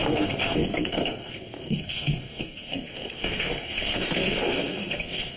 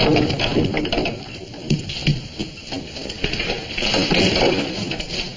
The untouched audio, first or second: second